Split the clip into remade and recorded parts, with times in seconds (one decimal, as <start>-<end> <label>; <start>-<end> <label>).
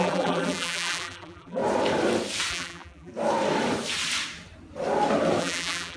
0.0-1.6 remade; 1.6-2.5 recorded; 2.5-3.1 remade; 3.1-5.4 recorded; 5.4-6.0 remade